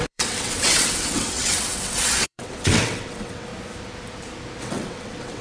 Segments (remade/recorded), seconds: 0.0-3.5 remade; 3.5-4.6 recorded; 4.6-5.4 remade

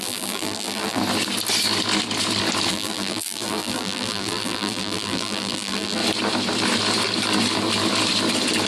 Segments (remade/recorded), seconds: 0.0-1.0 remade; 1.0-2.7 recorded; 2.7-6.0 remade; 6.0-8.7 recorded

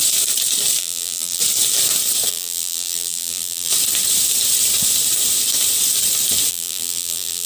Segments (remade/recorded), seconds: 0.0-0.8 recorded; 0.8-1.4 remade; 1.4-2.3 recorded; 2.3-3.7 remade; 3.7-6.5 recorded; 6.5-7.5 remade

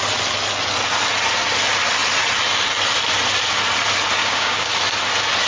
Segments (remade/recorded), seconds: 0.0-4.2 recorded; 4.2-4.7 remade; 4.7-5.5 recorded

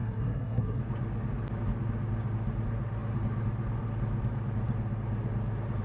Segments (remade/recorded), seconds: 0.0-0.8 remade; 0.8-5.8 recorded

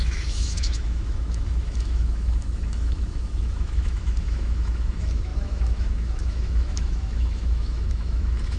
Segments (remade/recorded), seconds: 0.0-8.6 remade

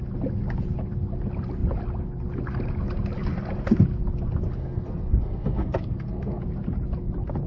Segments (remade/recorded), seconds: 0.0-4.6 recorded; 4.6-6.4 remade; 6.4-7.5 recorded

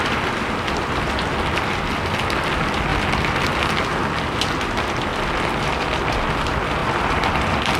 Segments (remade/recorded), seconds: 0.0-7.8 recorded